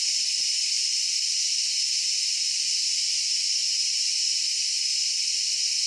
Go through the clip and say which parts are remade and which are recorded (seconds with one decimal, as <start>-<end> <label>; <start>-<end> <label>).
0.0-1.7 remade; 1.7-2.4 recorded; 2.4-4.9 remade; 4.9-5.5 recorded; 5.5-5.9 remade